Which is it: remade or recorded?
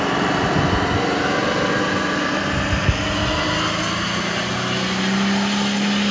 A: recorded